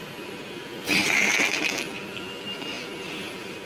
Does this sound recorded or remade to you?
recorded